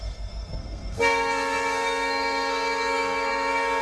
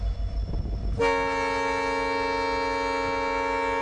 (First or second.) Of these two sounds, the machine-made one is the first